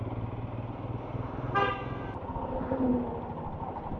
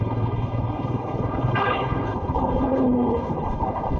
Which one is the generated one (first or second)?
second